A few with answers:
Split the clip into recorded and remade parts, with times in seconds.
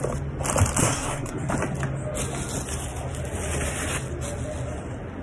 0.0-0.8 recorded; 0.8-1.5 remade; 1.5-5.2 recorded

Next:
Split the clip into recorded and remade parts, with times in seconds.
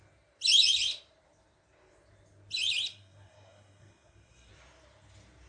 0.0-2.9 recorded; 2.9-4.5 remade; 4.5-5.5 recorded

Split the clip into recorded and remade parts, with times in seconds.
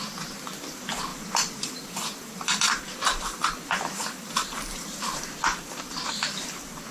0.0-1.1 recorded; 1.1-5.2 remade; 5.2-6.9 recorded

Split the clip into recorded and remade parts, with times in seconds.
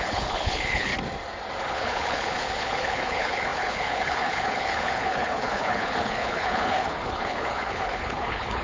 0.0-0.9 remade; 0.9-1.6 recorded; 1.6-8.6 remade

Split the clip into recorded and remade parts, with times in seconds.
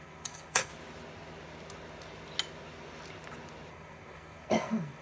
0.0-0.7 remade; 0.7-3.7 recorded; 3.7-5.0 remade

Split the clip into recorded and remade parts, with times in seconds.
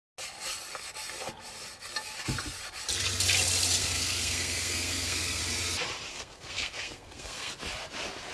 0.0-3.8 recorded; 3.8-5.4 remade; 5.4-6.1 recorded; 6.1-7.5 remade; 7.5-8.3 recorded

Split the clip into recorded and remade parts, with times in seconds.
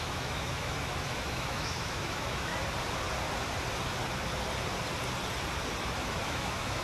0.0-2.5 remade; 2.5-5.8 recorded; 5.8-6.8 remade